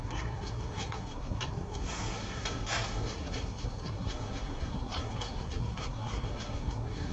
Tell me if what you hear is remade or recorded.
remade